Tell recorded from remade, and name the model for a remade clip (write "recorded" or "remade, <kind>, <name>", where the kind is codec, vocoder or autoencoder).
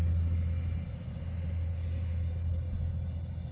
recorded